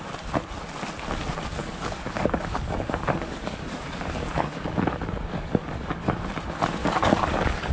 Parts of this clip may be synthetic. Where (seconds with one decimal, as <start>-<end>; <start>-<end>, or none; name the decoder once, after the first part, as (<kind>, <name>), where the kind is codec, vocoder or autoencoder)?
1.6-6.2 (codec, DAC); 6.8-7.7